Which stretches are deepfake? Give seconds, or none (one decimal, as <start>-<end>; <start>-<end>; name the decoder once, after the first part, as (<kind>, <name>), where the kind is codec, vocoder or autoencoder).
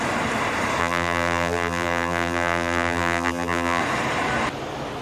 0.8-3.8 (vocoder, BigVGAN v2)